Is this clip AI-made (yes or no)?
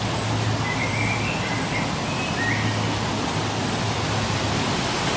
no